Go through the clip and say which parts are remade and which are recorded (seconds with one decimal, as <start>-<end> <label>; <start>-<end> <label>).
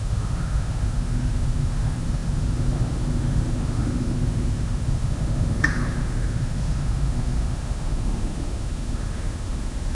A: 0.0-9.9 remade